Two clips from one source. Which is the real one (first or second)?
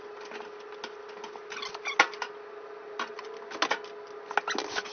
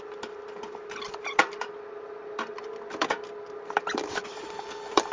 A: first